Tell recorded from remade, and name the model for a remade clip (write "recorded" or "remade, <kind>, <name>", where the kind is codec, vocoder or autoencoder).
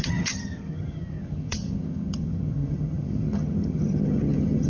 remade, vocoder, HiFi-GAN